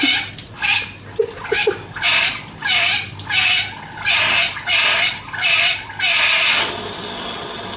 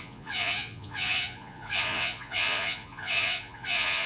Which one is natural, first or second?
first